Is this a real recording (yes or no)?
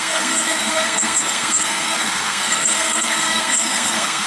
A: no